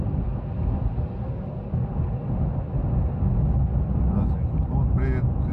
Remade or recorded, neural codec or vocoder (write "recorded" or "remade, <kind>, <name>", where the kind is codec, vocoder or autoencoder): recorded